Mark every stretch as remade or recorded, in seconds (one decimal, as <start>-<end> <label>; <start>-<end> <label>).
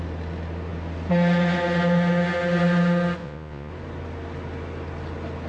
0.0-3.2 recorded; 3.2-3.7 remade; 3.7-5.5 recorded